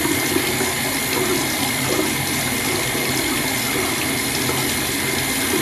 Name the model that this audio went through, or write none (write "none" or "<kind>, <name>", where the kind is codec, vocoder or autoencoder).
none